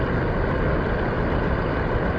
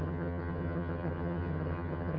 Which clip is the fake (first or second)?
second